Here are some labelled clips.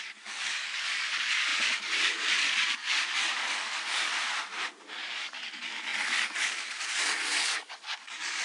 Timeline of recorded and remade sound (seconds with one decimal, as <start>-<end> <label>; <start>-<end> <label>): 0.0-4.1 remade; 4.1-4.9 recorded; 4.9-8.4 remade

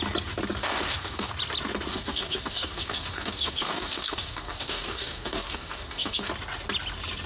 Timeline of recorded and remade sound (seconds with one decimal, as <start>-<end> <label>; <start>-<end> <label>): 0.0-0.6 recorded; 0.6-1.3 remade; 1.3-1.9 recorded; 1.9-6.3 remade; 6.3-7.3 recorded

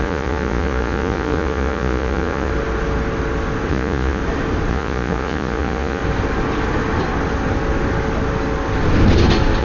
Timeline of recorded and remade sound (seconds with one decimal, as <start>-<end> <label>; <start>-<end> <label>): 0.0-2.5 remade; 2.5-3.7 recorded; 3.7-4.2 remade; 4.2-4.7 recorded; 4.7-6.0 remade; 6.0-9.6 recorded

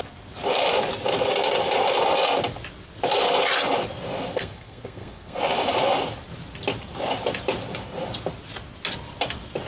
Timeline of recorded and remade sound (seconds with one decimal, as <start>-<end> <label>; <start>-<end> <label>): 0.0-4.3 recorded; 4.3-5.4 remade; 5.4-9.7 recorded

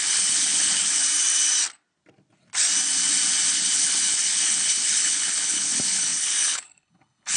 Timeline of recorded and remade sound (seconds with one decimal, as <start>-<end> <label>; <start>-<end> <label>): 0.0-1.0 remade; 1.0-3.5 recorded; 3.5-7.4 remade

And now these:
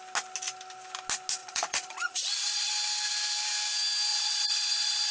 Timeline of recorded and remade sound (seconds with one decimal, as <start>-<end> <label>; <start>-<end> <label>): 0.0-1.4 recorded; 1.4-2.7 remade; 2.7-4.1 recorded; 4.1-5.1 remade